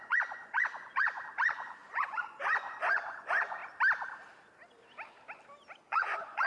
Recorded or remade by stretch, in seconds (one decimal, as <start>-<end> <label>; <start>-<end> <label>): 0.0-3.6 remade; 3.6-5.8 recorded; 5.8-6.5 remade